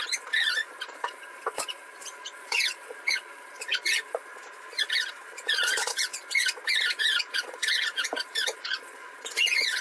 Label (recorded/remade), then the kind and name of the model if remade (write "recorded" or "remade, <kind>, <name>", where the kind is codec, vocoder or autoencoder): remade, vocoder, Vocos